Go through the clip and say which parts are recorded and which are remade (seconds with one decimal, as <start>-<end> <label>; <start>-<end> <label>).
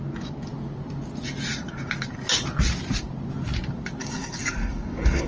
0.0-4.0 recorded; 4.0-5.3 remade